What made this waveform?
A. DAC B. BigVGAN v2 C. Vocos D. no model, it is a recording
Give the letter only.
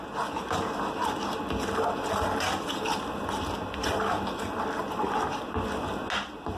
D